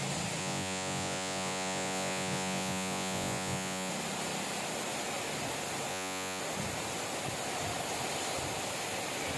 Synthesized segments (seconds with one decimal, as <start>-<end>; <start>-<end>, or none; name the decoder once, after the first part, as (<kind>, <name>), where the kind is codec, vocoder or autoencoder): 0.4-3.9 (vocoder, Vocos); 5.9-6.4